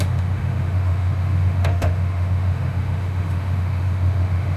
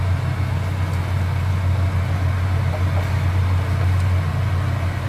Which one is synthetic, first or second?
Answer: first